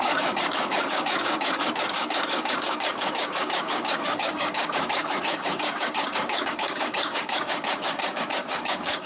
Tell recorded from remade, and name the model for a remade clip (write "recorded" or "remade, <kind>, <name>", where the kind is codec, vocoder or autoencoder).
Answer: remade, codec, DAC